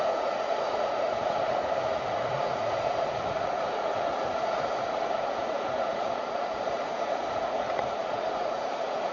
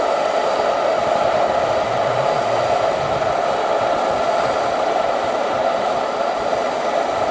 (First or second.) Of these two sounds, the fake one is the first